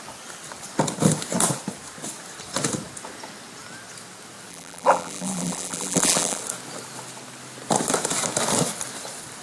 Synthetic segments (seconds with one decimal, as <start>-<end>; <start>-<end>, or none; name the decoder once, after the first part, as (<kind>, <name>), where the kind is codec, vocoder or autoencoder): 4.5-6.4 (vocoder, BigVGAN v2)